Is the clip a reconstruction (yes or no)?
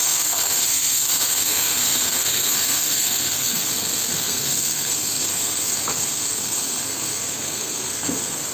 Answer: yes